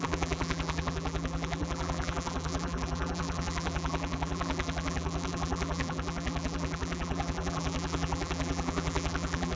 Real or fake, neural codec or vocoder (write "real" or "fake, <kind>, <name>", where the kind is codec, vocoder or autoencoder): fake, vocoder, BigVGAN v2